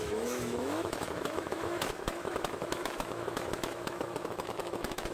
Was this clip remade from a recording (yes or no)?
yes